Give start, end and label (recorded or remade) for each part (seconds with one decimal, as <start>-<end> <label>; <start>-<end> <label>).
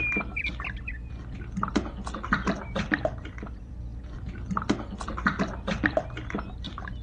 0.0-7.0 recorded